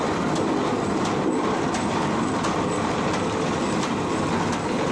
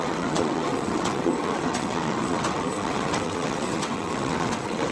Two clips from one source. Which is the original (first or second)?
first